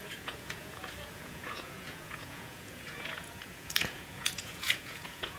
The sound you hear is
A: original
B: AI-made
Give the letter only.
B